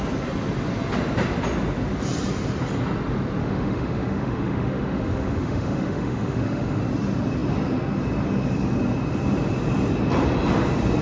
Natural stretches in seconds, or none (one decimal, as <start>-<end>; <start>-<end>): 0.0-3.4; 6.8-11.0